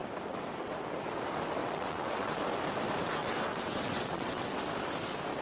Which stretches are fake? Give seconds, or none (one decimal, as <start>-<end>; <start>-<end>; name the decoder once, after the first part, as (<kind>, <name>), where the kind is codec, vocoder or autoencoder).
1.6-2.4 (vocoder, WaveNeXt); 3.2-4.5